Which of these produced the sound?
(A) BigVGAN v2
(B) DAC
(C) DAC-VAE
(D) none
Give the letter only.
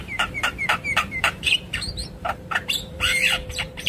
A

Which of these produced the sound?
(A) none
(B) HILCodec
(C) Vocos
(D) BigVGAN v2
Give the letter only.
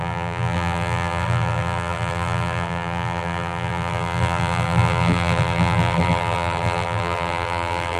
D